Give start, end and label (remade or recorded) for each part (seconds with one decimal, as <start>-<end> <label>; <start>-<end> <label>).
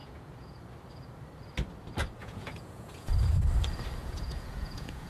0.0-0.6 remade; 0.6-2.2 recorded; 2.2-3.1 remade; 3.1-4.0 recorded; 4.0-5.1 remade